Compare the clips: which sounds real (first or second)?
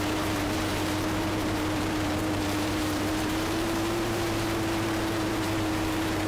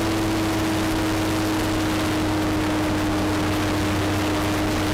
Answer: second